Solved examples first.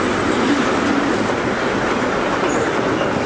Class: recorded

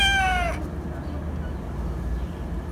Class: recorded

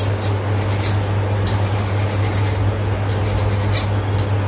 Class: recorded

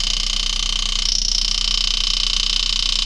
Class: recorded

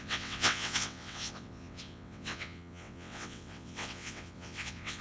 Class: remade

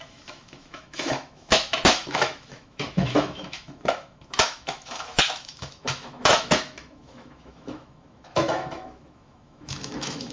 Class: remade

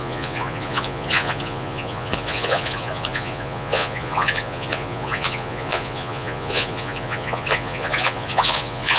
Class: remade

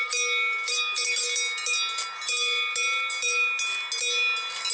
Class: recorded